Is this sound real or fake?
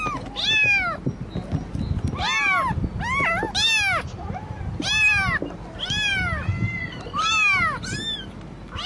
real